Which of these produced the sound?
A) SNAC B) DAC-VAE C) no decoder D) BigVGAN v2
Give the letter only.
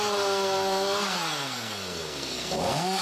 A